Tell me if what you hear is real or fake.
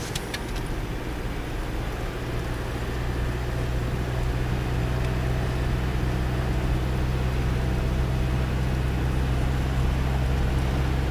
real